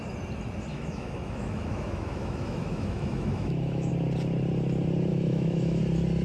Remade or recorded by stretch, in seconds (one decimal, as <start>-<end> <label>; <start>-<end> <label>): 0.0-0.7 recorded; 0.7-3.9 remade; 3.9-5.1 recorded; 5.1-5.8 remade; 5.8-6.2 recorded